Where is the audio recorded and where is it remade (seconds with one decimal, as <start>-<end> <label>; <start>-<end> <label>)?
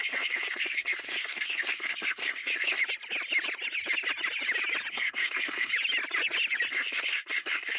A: 0.0-2.8 remade; 2.8-4.9 recorded; 4.9-5.7 remade; 5.7-6.7 recorded; 6.7-7.8 remade